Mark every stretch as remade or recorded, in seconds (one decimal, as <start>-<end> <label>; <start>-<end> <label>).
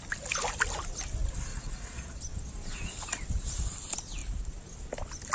0.0-1.5 recorded; 1.5-2.2 remade; 2.2-5.3 recorded